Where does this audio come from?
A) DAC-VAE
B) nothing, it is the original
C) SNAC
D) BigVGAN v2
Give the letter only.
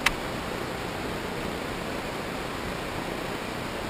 B